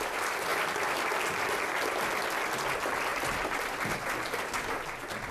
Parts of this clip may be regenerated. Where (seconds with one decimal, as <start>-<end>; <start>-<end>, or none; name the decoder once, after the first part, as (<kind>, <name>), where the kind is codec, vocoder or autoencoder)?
0.5-1.5 (vocoder, BigVGAN v2); 3.1-3.7